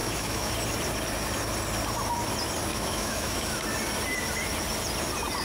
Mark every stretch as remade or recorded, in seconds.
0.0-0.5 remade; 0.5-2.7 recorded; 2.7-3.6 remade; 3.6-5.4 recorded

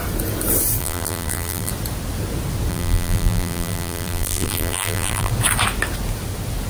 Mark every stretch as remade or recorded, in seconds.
0.0-0.8 recorded; 0.8-1.7 remade; 1.7-2.7 recorded; 2.7-5.3 remade; 5.3-6.7 recorded

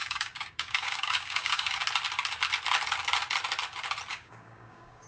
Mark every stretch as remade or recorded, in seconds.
0.0-1.8 remade; 1.8-4.1 recorded; 4.1-5.1 remade

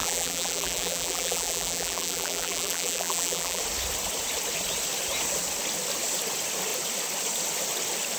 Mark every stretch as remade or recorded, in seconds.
0.0-3.6 remade; 3.6-8.2 recorded

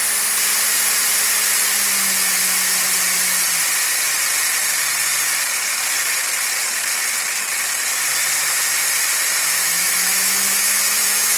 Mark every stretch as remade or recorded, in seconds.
0.0-9.3 recorded; 9.3-11.4 remade

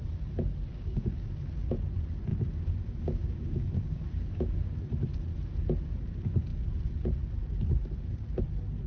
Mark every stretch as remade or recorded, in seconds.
0.0-0.7 recorded; 0.7-1.3 remade; 1.3-2.3 recorded; 2.3-4.7 remade; 4.7-8.9 recorded